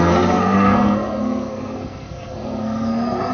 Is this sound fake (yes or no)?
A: yes